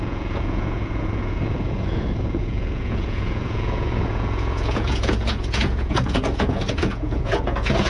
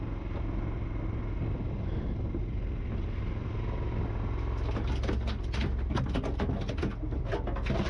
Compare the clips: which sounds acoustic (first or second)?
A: second